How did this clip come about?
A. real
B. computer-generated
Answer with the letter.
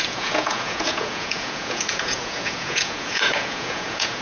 B